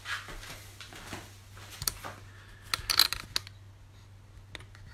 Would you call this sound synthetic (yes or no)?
no